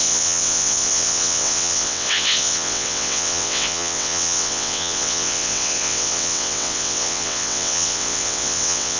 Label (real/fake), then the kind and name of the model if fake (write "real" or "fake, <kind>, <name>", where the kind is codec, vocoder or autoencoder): fake, vocoder, WaveNeXt